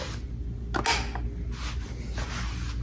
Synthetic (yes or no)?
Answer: no